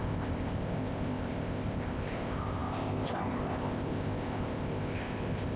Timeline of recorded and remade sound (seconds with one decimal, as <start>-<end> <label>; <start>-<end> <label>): 0.0-5.6 remade